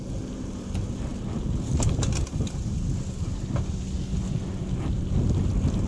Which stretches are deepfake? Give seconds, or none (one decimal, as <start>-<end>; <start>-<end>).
none